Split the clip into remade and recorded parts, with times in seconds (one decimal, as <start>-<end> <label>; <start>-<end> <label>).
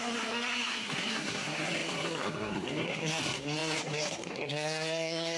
0.0-5.4 remade